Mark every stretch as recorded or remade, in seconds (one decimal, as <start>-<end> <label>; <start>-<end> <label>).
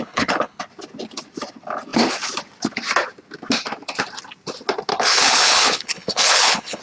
0.0-0.6 remade; 0.6-4.9 recorded; 4.9-6.8 remade